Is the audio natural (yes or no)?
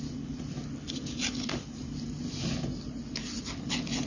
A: yes